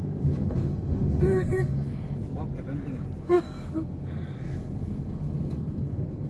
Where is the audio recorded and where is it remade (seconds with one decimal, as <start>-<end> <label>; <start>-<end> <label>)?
0.0-2.2 remade; 2.2-3.2 recorded; 3.2-6.3 remade